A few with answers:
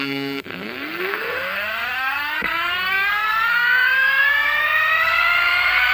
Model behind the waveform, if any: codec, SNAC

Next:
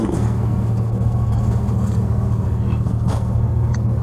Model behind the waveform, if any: codec, SNAC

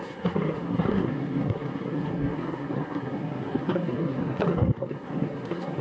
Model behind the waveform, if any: codec, SNAC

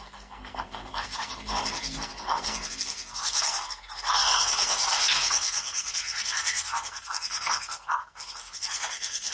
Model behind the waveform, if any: codec, SNAC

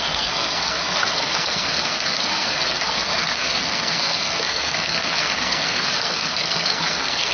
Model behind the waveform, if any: codec, SNAC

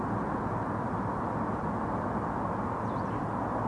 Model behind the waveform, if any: none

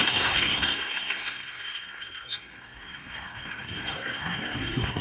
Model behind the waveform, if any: codec, SNAC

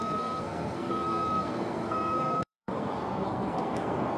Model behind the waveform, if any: codec, SNAC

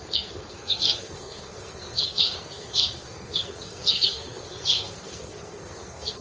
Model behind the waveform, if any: codec, SNAC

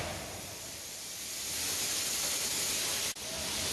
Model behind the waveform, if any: none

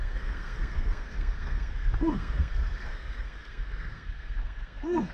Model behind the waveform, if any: codec, SNAC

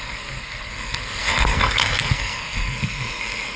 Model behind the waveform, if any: codec, SNAC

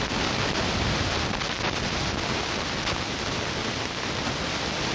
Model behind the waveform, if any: none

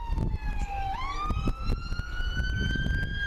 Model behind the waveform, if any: none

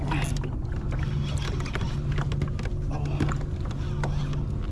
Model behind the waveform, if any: none